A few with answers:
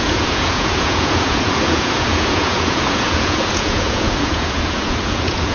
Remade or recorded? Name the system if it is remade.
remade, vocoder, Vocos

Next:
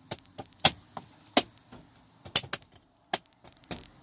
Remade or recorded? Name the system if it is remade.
recorded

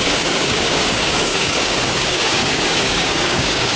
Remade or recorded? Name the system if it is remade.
remade, codec, DAC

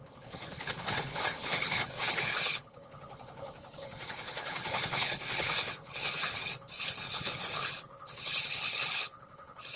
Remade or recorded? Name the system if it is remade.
remade, codec, HILCodec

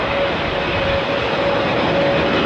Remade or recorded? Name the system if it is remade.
recorded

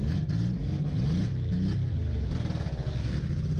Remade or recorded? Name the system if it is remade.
recorded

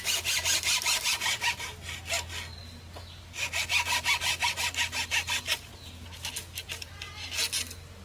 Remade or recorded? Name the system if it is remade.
recorded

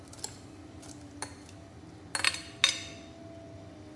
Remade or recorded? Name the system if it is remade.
recorded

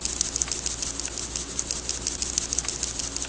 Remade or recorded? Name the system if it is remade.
recorded